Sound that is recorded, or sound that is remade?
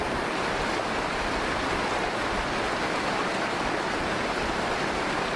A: remade